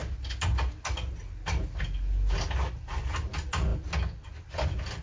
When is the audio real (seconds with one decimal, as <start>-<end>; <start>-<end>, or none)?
0.0-5.0